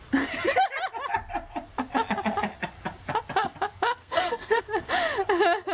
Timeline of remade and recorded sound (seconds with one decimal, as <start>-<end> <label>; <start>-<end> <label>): 0.0-4.0 recorded; 4.0-4.6 remade; 4.6-5.7 recorded